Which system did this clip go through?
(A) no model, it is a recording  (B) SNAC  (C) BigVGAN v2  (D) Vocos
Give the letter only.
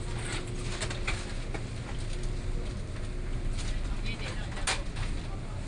A